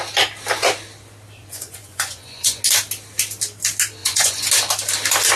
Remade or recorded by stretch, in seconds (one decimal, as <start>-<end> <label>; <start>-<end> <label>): 0.0-1.4 recorded; 1.4-2.6 remade; 2.6-4.0 recorded; 4.0-4.5 remade; 4.5-5.4 recorded